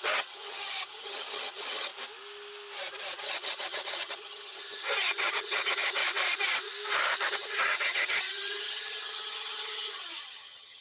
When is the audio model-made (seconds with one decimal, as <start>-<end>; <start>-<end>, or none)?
0.0-1.9; 3.2-6.0; 7.3-10.8